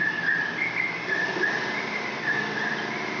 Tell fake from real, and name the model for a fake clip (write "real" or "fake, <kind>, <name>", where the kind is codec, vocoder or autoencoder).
real